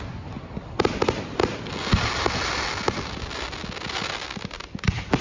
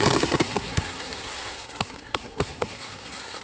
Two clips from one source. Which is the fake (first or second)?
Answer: second